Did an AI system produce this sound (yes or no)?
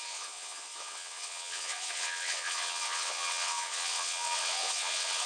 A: yes